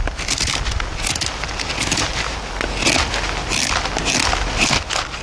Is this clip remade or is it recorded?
recorded